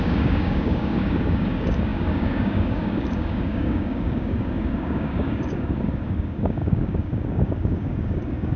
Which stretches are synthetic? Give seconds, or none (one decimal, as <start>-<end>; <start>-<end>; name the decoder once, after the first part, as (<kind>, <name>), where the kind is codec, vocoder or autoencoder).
0.0-8.6 (codec, DAC)